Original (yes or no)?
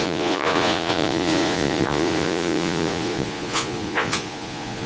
no